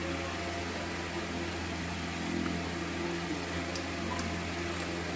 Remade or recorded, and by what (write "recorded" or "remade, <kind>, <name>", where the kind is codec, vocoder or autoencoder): recorded